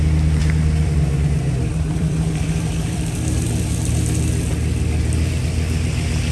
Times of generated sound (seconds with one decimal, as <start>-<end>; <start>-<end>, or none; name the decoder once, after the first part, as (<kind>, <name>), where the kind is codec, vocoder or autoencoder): 0.4-4.2 (vocoder, BigVGAN v2)